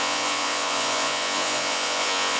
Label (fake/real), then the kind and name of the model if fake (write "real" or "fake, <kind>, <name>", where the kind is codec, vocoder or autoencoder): fake, vocoder, Vocos